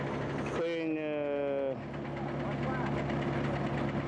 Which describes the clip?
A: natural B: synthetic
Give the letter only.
A